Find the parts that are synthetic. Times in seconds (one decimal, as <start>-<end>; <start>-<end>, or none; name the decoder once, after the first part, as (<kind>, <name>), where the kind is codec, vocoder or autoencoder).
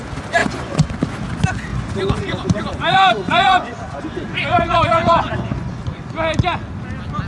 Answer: 0.4-0.9 (vocoder, Vocos); 1.7-6.1